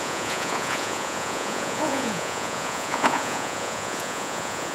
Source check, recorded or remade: remade